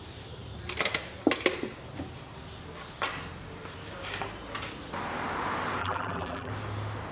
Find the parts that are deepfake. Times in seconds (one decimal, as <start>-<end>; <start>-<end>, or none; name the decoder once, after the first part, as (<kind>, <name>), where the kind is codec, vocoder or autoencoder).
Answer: 5.8-6.5 (vocoder, BigVGAN v2)